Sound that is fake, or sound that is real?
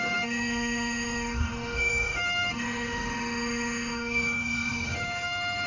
fake